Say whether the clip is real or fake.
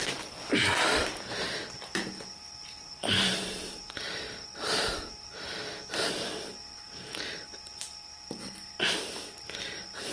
fake